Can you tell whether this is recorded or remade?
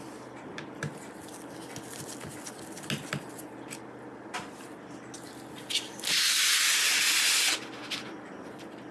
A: recorded